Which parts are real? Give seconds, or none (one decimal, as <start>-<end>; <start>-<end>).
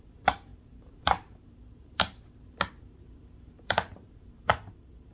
none